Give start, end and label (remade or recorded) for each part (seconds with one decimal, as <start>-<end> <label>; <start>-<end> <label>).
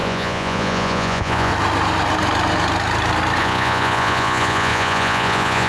0.0-1.5 remade; 1.5-3.4 recorded; 3.4-5.7 remade